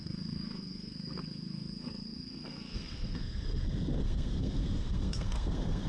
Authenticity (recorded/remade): remade